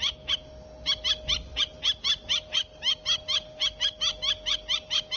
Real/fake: real